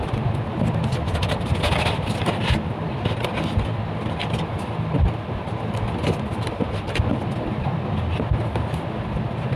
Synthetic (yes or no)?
no